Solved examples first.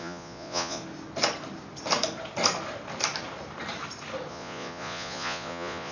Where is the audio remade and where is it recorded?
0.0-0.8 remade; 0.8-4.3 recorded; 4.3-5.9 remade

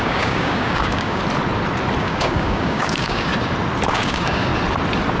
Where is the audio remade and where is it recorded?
0.0-1.2 remade; 1.2-2.0 recorded; 2.0-3.3 remade; 3.3-3.9 recorded; 3.9-4.5 remade; 4.5-5.2 recorded

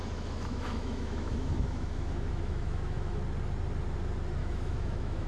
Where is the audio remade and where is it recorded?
0.0-3.2 remade; 3.2-4.4 recorded; 4.4-5.3 remade

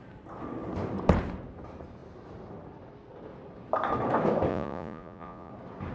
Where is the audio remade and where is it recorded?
0.0-4.5 recorded; 4.5-5.5 remade; 5.5-5.9 recorded

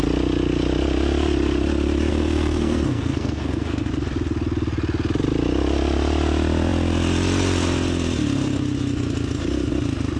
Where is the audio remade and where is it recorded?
0.0-2.1 recorded; 2.1-3.9 remade; 3.9-10.2 recorded